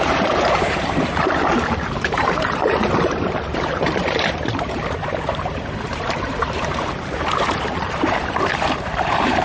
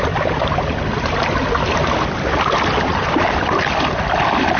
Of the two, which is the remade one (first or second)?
first